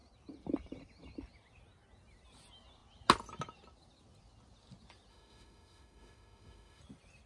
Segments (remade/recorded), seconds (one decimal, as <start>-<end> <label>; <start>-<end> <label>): 0.0-5.1 recorded; 5.1-6.8 remade; 6.8-7.3 recorded